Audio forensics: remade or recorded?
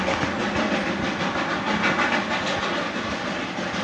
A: recorded